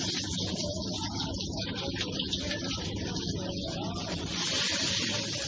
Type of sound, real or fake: real